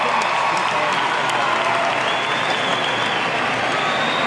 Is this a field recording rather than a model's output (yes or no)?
yes